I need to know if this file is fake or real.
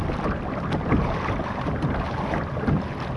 real